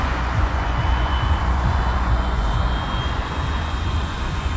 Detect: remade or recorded remade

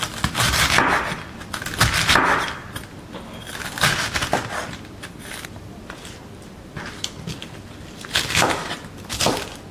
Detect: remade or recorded recorded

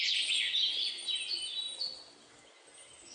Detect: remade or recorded recorded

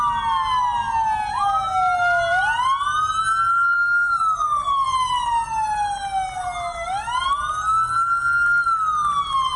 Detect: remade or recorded recorded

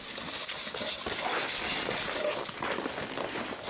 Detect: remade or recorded recorded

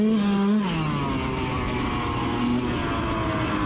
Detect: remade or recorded recorded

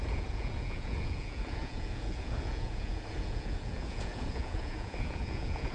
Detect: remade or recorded remade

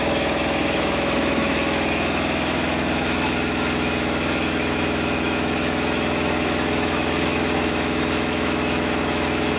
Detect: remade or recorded remade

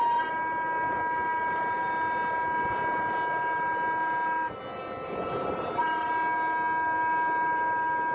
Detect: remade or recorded recorded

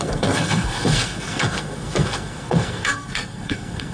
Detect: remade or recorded remade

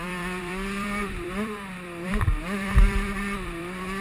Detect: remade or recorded remade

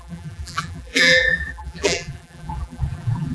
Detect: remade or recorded remade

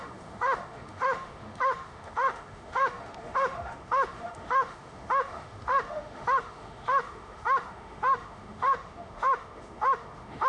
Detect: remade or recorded remade